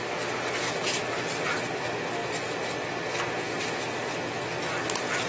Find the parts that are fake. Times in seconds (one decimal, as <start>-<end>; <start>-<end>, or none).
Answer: 1.0-1.6